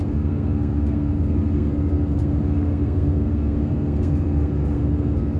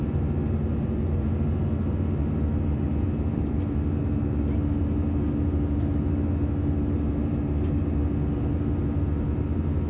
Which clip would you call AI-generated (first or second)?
first